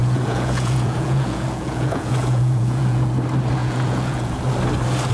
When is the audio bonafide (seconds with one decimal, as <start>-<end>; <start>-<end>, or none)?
3.1-3.6; 4.4-5.1